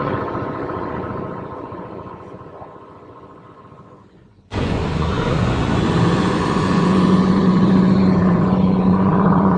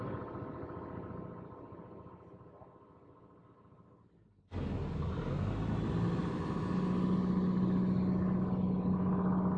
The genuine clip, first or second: second